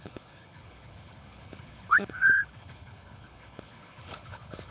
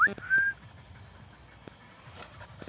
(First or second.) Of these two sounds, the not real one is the first